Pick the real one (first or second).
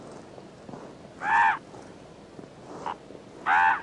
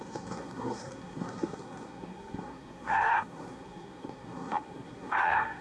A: first